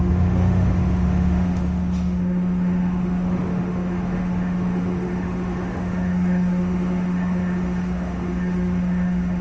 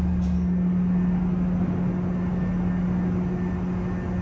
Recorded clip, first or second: second